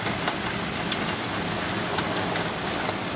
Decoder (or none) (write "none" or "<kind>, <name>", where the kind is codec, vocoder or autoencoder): none